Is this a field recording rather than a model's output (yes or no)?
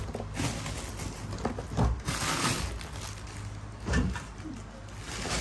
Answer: yes